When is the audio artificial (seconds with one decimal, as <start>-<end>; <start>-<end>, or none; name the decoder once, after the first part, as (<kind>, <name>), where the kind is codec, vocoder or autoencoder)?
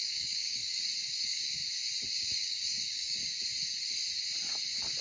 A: 0.0-0.6 (codec, DAC); 1.2-1.6; 2.1-3.2